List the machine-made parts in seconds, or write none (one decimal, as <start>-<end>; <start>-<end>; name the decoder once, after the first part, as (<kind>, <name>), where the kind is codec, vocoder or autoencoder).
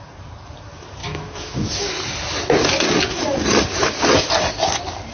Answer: 1.0-1.7 (autoencoder, DAC-VAE)